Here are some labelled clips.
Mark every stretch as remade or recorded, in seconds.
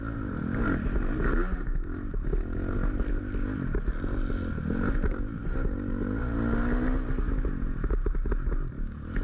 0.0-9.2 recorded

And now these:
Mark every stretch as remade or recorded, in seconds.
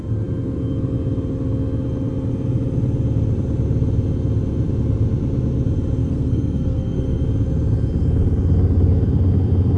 0.0-6.0 recorded; 6.0-7.2 remade; 7.2-9.8 recorded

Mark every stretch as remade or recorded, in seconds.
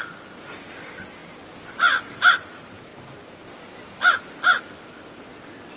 0.0-1.2 remade; 1.2-2.0 recorded; 2.0-2.9 remade; 2.9-4.6 recorded; 4.6-5.8 remade